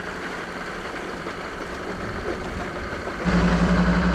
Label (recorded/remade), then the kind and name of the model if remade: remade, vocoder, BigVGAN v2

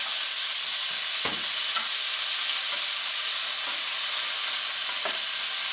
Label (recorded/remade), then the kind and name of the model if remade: recorded